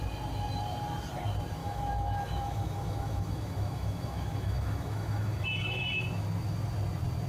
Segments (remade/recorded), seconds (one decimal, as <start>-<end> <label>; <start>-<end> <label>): 0.0-1.6 recorded; 1.6-6.0 remade; 6.0-7.3 recorded